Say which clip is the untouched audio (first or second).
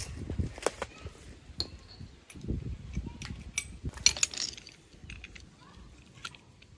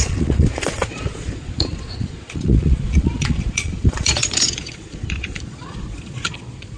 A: first